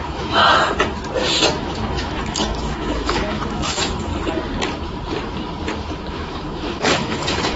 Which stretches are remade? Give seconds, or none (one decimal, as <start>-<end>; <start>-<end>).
0.0-0.4; 1.6-4.1; 6.1-7.6

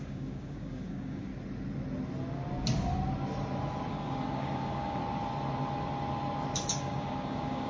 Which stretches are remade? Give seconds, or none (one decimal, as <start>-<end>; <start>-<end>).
0.0-1.3; 3.9-5.0; 6.8-7.7

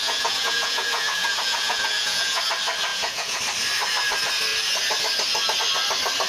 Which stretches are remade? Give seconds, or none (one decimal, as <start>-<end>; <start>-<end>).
0.0-2.4; 2.9-3.4